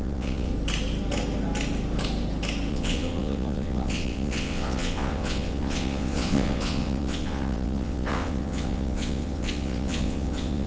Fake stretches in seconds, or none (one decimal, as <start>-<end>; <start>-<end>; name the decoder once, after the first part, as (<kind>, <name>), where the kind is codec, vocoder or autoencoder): 0.0-0.5 (vocoder, WaveNeXt); 2.7-10.7

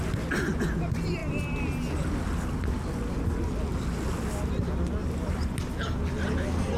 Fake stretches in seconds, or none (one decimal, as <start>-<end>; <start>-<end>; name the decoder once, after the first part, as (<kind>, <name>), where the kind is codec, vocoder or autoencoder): 5.0-5.6 (vocoder, BigVGAN v2)

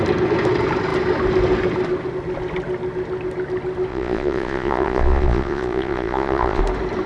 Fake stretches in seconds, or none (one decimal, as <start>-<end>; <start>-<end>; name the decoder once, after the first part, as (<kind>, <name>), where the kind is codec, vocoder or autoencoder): 3.9-6.6 (vocoder, Vocos)